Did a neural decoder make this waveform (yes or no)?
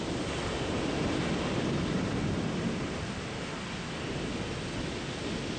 no